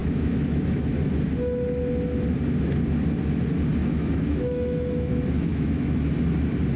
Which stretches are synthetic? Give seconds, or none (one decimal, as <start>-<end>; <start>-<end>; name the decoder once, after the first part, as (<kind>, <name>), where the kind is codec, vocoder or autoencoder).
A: 0.0-0.9 (autoencoder, DAC-VAE); 3.8-5.1; 5.5-6.1